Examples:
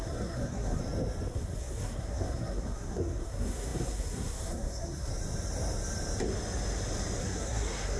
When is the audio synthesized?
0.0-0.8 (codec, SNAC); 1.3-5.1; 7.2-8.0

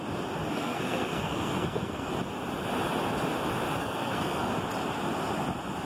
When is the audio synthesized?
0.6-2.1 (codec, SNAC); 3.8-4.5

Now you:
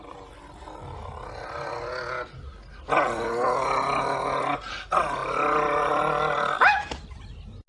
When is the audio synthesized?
none

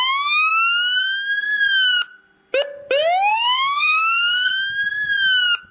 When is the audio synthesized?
3.3-4.5 (codec, SNAC)

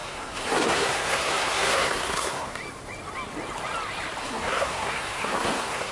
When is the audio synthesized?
0.0-2.6 (codec, SNAC); 4.2-5.9

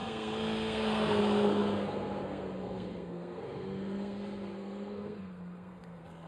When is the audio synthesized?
0.0-6.3 (codec, SNAC)